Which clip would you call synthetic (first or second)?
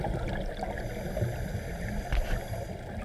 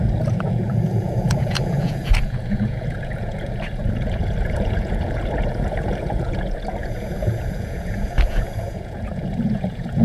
second